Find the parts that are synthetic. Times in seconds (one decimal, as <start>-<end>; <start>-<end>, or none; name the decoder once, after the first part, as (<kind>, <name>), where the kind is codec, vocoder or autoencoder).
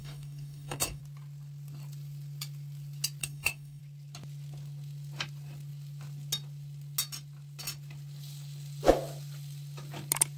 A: 0.0-1.0 (codec, DAC); 3.2-3.8